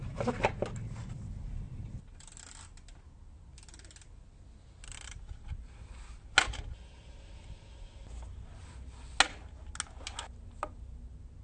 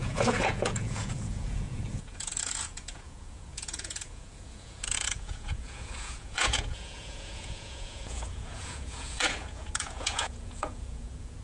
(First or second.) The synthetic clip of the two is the second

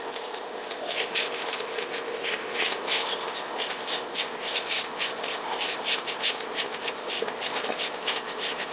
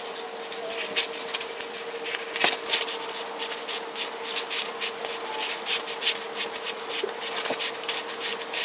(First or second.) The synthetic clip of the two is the first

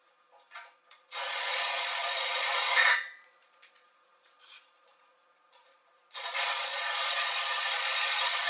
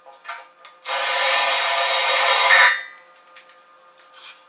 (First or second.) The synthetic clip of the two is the first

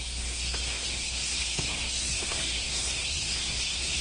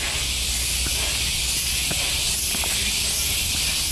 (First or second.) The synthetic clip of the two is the first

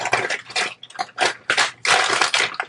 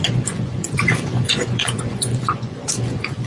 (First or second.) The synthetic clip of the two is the second